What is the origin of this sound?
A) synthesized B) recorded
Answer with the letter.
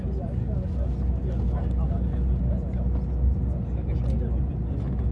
B